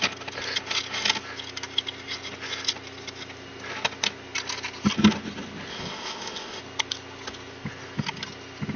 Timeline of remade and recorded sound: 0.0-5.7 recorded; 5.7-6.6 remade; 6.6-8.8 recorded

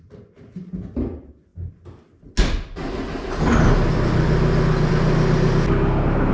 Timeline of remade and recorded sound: 0.0-6.3 recorded